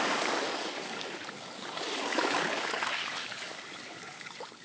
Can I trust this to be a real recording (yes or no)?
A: no